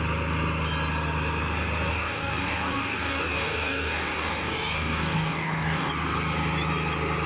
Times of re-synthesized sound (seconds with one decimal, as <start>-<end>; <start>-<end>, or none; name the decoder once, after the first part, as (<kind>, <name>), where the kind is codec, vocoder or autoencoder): 1.9-5.9 (codec, DAC)